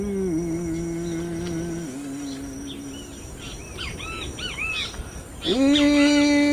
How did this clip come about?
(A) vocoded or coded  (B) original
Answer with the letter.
B